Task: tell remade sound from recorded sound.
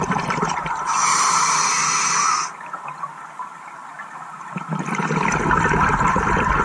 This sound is recorded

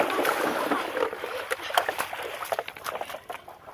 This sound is recorded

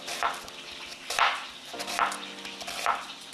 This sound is recorded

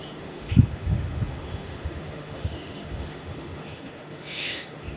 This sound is remade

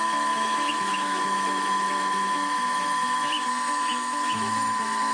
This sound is remade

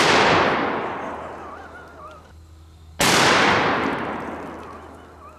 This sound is recorded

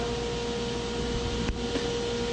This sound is recorded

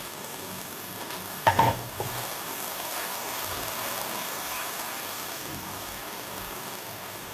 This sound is remade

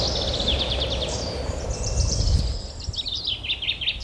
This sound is remade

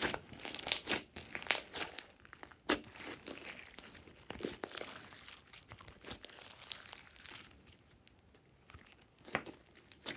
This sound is recorded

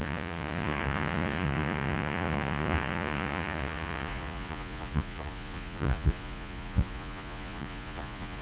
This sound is remade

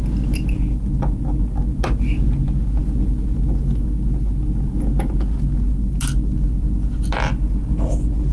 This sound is recorded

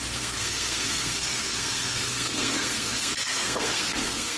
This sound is remade